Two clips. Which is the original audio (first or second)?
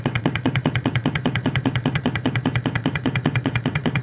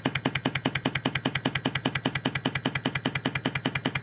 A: second